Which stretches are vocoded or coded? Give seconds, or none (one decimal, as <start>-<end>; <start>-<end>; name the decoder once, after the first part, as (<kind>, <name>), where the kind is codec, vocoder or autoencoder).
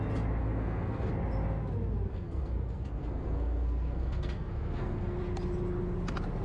0.4-1.1 (codec, SNAC); 2.1-5.2